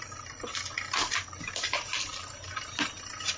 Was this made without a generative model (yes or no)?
yes